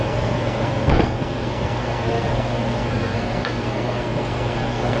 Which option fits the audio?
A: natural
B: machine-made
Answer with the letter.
B